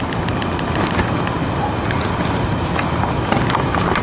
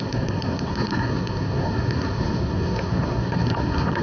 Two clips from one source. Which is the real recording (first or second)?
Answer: first